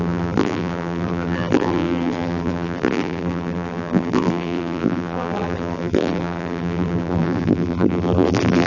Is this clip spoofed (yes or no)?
yes